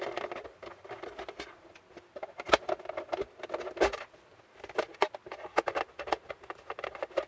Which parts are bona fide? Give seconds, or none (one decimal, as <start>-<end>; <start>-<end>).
0.0-7.3